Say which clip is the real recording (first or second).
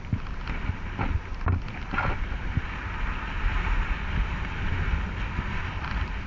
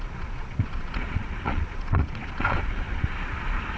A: first